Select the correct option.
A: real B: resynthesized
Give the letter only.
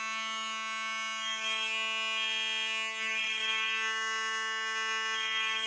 A